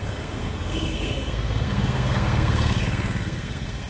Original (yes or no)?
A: no